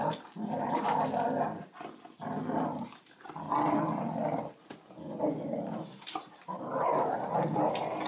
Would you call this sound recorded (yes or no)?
yes